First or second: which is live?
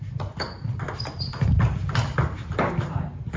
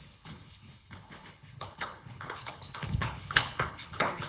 first